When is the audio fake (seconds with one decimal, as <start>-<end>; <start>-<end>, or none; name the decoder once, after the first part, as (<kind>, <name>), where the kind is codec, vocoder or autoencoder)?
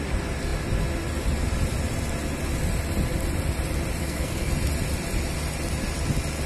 4.0-4.5 (codec, SNAC)